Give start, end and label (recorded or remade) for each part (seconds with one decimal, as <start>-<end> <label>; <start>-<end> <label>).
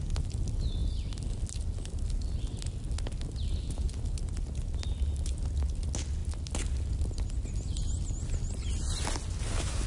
0.0-9.9 recorded